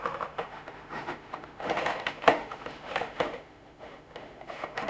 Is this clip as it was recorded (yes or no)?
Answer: no